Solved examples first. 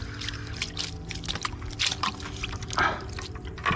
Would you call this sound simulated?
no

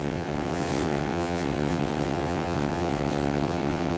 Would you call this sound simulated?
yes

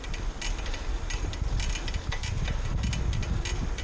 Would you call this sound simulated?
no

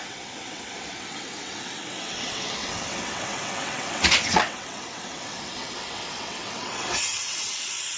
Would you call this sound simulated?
yes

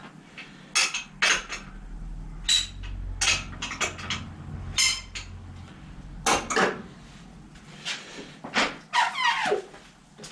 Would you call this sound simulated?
no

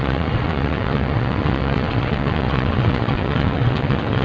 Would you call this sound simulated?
yes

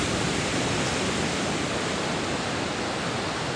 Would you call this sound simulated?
no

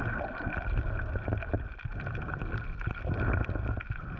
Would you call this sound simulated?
no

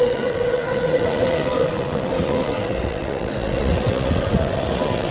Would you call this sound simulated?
yes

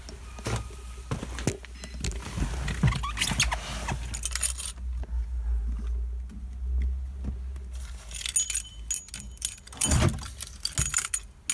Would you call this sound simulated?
no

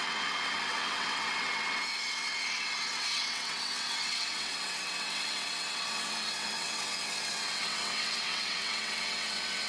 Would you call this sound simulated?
yes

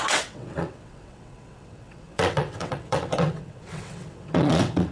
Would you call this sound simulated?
yes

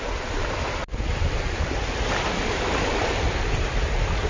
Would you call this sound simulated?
no